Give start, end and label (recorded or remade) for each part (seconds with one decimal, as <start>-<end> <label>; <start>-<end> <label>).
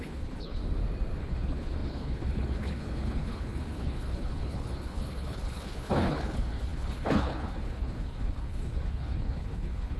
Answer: 0.0-0.6 remade; 0.6-1.2 recorded; 1.2-10.0 remade